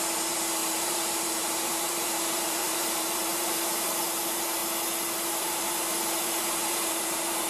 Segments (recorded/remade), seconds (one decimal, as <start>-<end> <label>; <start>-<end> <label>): 0.0-4.6 remade; 4.6-5.4 recorded; 5.4-7.5 remade